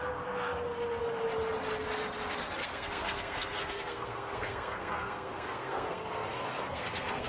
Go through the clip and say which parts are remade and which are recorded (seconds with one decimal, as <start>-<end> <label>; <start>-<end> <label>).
0.0-2.6 recorded; 2.6-7.3 remade